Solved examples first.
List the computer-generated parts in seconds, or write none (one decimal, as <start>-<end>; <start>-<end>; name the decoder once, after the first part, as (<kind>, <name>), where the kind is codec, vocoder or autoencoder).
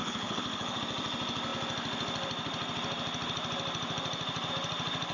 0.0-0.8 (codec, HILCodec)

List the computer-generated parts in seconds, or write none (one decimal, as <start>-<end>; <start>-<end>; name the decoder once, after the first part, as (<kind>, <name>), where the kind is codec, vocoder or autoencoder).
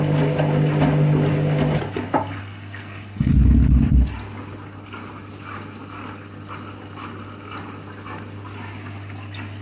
2.4-3.3 (codec, SNAC)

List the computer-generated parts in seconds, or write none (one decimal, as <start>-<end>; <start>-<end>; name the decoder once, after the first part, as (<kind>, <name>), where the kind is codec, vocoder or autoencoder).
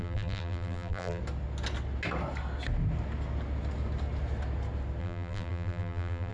0.0-1.2 (vocoder, BigVGAN v2); 5.0-6.3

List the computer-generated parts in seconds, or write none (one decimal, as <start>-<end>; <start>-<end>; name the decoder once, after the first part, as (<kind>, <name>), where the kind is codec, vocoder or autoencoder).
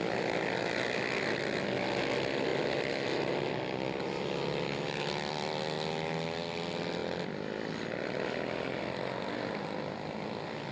none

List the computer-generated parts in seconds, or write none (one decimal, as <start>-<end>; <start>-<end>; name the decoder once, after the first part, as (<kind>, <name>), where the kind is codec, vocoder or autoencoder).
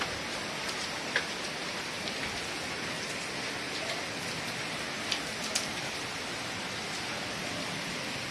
none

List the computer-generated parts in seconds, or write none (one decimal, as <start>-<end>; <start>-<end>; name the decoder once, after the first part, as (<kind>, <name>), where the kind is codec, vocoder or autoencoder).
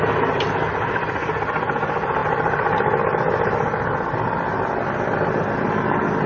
none